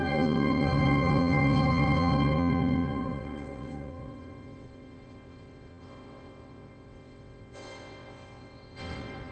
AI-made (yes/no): yes